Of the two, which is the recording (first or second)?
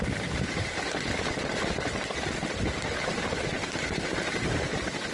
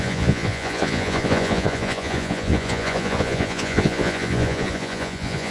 first